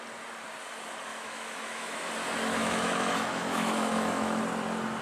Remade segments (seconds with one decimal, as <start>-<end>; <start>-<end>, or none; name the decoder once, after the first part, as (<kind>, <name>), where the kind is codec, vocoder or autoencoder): 1.1-2.1 (autoencoder, DAC-VAE); 2.6-4.4